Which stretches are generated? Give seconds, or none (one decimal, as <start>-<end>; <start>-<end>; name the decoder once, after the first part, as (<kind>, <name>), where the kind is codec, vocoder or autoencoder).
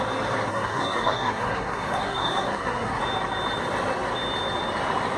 0.5-3.0 (codec, SNAC)